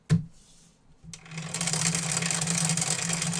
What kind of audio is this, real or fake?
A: real